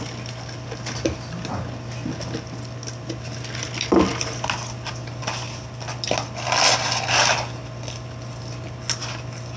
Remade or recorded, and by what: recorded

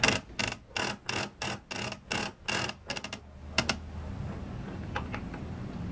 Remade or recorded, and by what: recorded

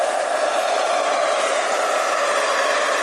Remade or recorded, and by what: recorded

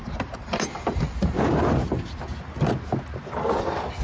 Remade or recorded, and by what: recorded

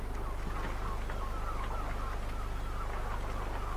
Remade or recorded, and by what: recorded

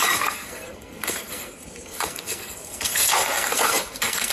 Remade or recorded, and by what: remade, codec, SNAC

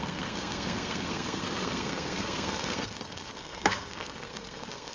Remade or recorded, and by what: remade, codec, SNAC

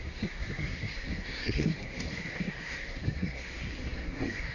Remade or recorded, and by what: remade, codec, SNAC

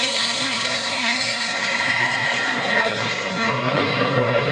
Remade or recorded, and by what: remade, codec, SNAC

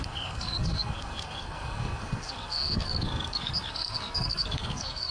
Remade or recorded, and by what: remade, codec, SNAC